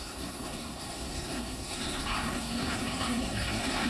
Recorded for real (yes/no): no